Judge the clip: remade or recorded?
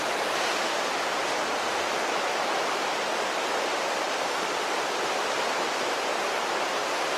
recorded